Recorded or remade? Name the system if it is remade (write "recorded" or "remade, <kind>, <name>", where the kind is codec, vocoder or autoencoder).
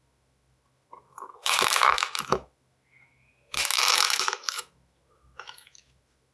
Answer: remade, autoencoder, DAC-VAE